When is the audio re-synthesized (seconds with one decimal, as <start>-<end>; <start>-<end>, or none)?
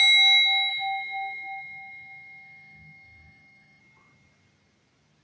0.7-3.8